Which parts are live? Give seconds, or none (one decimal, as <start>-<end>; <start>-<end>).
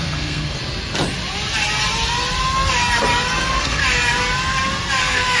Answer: 0.6-3.4; 3.8-5.0